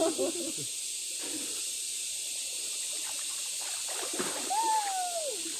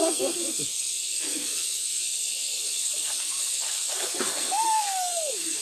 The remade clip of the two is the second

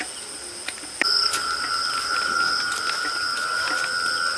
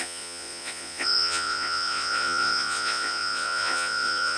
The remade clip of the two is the second